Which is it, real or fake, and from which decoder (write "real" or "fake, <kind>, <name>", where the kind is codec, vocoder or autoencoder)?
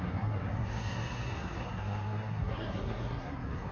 fake, codec, SNAC